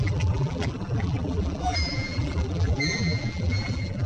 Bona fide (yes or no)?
no